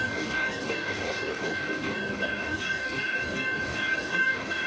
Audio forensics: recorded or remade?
remade